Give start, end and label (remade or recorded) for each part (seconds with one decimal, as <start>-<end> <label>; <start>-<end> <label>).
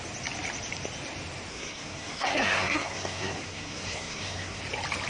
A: 0.0-1.5 recorded; 1.5-4.6 remade; 4.6-5.1 recorded